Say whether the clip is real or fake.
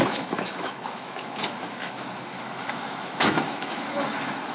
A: fake